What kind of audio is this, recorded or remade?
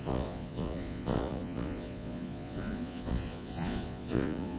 remade